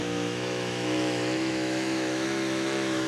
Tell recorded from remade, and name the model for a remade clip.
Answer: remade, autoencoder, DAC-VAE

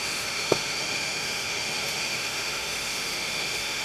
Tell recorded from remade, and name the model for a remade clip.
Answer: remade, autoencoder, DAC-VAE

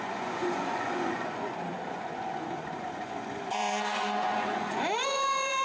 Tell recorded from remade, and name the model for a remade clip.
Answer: remade, vocoder, Vocos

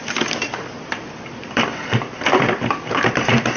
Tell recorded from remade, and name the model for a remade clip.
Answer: remade, vocoder, BigVGAN v2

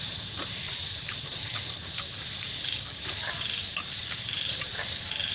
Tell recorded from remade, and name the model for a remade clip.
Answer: remade, vocoder, BigVGAN v2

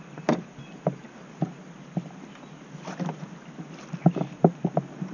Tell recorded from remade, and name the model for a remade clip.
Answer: recorded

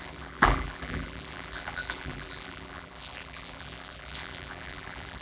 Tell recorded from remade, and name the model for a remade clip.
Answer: remade, vocoder, BigVGAN v2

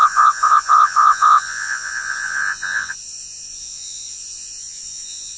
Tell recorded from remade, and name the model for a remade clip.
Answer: remade, vocoder, Vocos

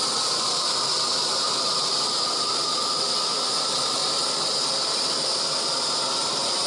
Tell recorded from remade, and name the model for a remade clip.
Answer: recorded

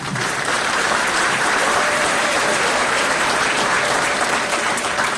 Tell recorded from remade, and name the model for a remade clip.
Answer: remade, vocoder, BigVGAN v2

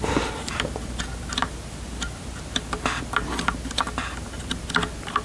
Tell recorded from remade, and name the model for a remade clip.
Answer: recorded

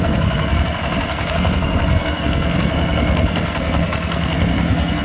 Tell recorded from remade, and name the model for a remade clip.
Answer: remade, codec, SNAC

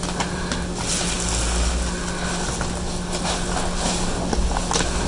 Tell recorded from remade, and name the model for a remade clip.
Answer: recorded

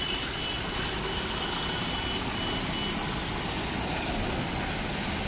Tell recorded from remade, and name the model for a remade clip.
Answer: recorded